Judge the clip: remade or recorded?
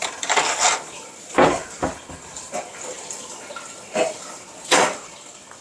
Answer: remade